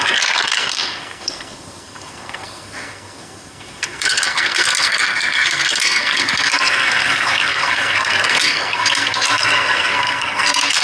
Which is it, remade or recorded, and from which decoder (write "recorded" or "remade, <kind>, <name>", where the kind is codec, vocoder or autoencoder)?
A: remade, codec, SNAC